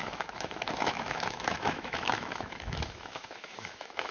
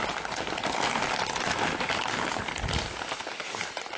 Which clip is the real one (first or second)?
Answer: second